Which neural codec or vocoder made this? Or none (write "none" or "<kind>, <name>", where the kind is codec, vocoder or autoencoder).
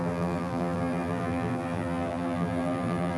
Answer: vocoder, BigVGAN v2